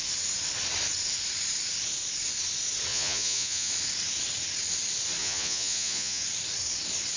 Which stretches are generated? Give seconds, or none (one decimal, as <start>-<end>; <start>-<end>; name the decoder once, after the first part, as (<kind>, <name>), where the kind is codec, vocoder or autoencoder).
2.9-3.7 (vocoder, Vocos); 5.2-6.2